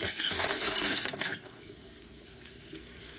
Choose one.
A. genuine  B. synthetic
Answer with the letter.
B